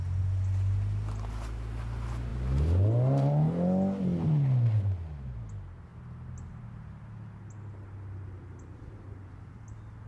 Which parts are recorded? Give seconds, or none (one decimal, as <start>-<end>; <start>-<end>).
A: 0.0-10.1

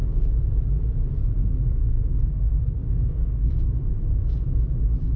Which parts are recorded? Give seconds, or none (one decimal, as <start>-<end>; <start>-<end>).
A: 0.0-1.7; 3.5-5.2

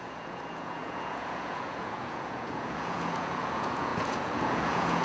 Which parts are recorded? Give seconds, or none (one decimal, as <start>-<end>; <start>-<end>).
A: none

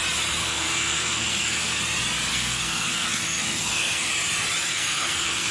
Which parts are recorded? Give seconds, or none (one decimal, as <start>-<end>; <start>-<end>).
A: 0.0-0.4; 1.8-2.3; 4.1-4.7

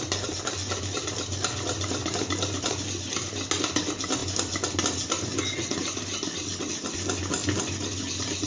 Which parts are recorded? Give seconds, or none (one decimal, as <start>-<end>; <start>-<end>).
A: 0.0-8.5

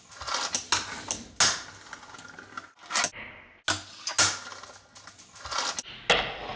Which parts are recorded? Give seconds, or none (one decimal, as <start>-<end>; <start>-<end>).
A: 0.0-6.6

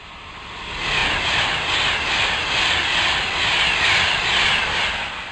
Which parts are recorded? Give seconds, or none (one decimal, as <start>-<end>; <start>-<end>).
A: 0.0-5.3